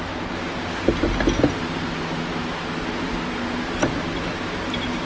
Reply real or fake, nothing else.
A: real